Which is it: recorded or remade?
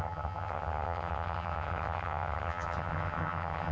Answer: remade